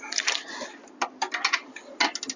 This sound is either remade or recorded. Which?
recorded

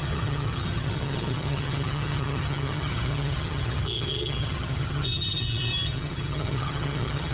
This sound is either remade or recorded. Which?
remade